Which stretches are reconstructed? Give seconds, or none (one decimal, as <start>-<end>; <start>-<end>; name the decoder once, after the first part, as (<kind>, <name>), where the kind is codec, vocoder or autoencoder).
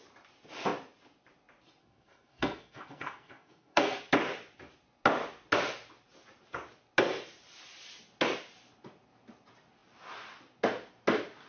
1.8-4.0 (codec, SNAC)